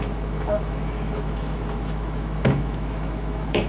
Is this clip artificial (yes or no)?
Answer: yes